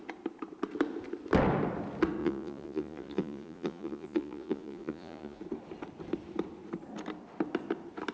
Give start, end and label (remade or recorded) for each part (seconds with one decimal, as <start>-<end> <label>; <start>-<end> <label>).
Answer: 0.0-2.2 recorded; 2.2-5.4 remade; 5.4-8.1 recorded